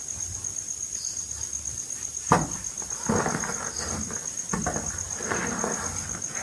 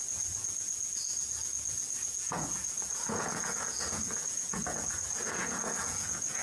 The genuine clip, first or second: first